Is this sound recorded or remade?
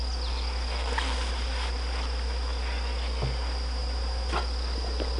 recorded